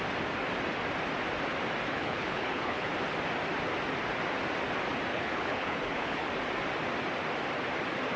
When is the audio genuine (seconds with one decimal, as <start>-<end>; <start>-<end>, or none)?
0.0-1.9; 2.9-5.1; 6.3-8.2